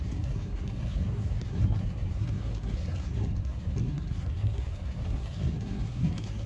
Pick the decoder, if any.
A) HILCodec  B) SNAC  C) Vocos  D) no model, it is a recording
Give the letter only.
B